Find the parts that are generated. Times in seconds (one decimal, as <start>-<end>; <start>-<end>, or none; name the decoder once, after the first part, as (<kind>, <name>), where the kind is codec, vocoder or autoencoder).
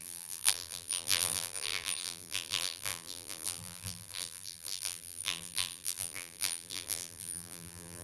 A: 0.0-8.0 (vocoder, BigVGAN v2)